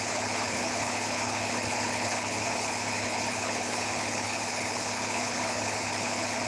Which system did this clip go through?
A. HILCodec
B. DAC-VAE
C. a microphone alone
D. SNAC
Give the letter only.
A